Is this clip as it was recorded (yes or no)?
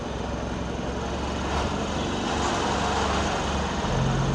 yes